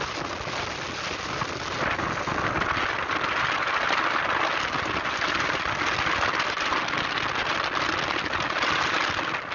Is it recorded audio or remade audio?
recorded